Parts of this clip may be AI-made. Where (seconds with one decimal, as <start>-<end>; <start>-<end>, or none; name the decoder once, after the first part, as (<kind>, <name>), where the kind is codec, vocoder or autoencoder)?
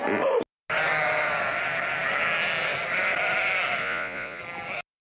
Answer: 3.8-4.4 (vocoder, Vocos)